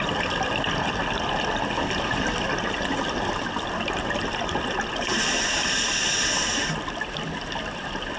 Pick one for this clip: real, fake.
real